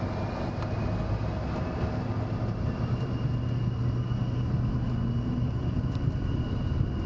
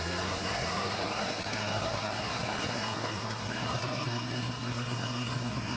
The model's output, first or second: second